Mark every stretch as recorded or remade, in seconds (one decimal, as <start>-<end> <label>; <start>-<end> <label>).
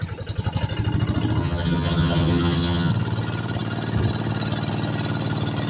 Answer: 0.0-1.4 recorded; 1.4-2.9 remade; 2.9-5.7 recorded